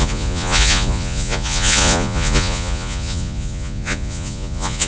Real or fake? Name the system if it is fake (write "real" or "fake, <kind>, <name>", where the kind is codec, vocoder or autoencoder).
fake, vocoder, Vocos